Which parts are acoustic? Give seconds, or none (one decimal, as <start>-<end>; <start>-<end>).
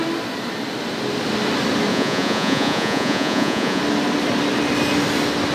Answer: 0.0-1.9; 3.8-5.5